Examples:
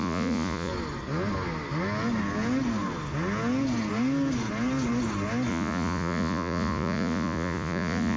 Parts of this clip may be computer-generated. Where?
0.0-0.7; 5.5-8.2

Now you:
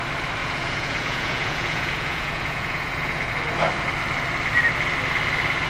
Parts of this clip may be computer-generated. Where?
0.4-3.3